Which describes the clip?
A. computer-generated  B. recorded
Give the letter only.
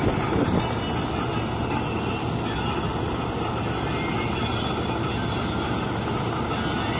B